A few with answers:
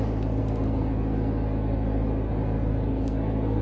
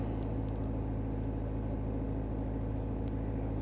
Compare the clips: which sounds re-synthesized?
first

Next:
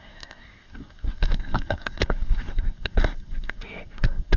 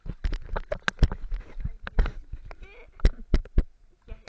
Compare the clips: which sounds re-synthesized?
first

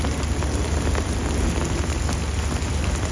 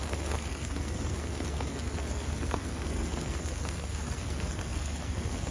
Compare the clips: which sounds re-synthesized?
second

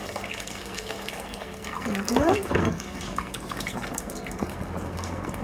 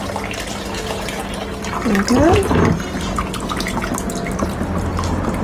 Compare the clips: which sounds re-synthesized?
first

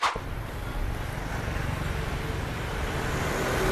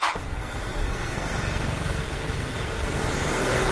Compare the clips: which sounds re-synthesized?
second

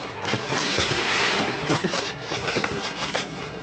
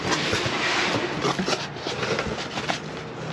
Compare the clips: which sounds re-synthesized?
first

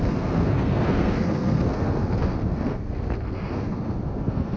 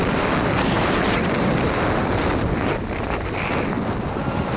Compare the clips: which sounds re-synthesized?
first